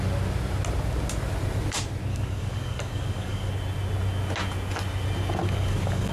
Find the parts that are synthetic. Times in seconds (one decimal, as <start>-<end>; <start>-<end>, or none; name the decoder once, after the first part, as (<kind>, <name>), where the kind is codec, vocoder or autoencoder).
2.1-3.5 (codec, DAC); 5.4-6.1